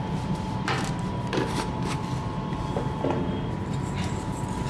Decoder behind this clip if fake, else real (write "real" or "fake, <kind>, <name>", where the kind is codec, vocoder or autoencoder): fake, vocoder, BigVGAN v2